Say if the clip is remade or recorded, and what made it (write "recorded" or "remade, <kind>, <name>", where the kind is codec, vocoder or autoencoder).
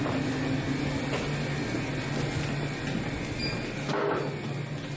recorded